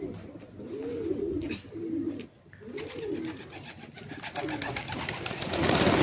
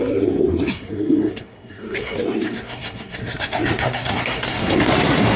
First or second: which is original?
first